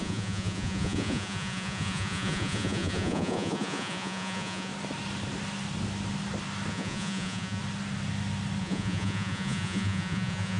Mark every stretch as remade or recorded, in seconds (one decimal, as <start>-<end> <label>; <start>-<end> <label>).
0.0-4.7 remade; 4.7-6.7 recorded; 6.7-7.6 remade; 7.6-8.6 recorded; 8.6-10.6 remade